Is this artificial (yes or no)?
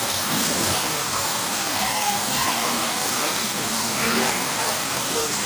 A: yes